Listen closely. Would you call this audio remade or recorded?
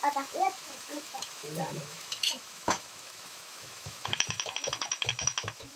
remade